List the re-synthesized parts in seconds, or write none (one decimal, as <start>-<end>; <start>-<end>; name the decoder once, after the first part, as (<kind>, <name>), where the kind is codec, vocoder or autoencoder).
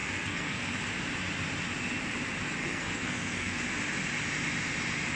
0.0-0.7 (codec, SNAC); 2.6-3.6